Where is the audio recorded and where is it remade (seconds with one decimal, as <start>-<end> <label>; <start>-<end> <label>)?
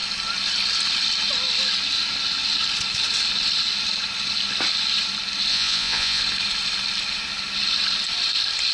0.0-5.5 recorded; 5.5-6.2 remade; 6.2-8.7 recorded